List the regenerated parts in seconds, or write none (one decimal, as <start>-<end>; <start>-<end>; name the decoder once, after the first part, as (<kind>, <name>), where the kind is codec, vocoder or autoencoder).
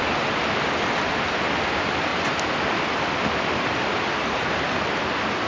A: none